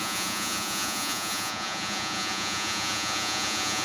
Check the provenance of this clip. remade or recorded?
remade